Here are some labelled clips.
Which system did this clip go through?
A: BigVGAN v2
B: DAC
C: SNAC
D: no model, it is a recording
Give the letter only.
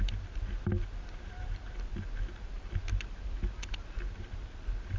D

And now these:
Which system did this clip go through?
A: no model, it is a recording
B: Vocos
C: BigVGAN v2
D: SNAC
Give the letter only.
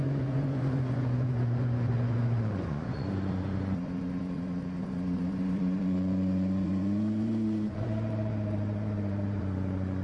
B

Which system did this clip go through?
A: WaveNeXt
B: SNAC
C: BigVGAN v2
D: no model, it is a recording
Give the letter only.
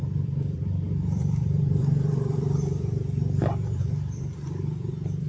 C